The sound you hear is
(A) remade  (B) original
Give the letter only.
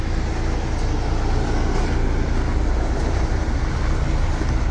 B